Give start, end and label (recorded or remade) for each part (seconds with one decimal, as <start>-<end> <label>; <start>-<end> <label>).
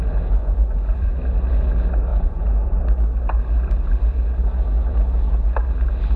0.0-0.4 recorded; 0.4-1.1 remade; 1.1-2.1 recorded; 2.1-2.8 remade; 2.8-6.2 recorded